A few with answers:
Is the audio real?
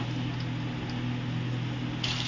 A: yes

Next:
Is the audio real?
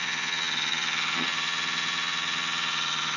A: no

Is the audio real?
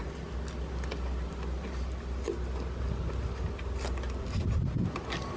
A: yes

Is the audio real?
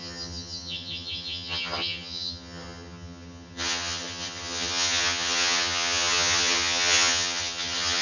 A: no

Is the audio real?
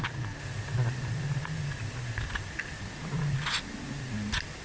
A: yes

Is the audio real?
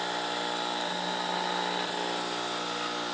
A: yes